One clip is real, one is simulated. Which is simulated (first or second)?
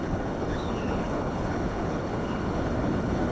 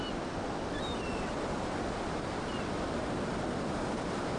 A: first